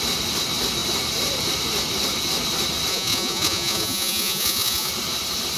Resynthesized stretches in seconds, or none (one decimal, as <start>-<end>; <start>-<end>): 2.9-4.9